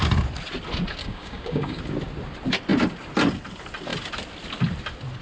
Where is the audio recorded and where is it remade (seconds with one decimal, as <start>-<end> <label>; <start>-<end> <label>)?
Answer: 0.0-1.0 recorded; 1.0-1.8 remade; 1.8-5.2 recorded